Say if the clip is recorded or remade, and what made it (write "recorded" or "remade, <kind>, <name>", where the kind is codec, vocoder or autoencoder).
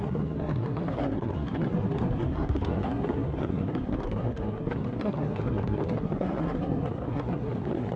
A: remade, codec, SNAC